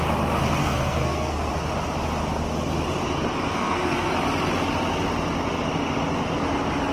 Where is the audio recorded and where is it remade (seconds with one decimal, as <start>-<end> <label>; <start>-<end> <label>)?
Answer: 0.0-0.6 recorded; 0.6-1.5 remade; 1.5-3.5 recorded; 3.5-4.1 remade; 4.1-6.9 recorded